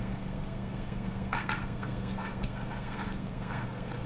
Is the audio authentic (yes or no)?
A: no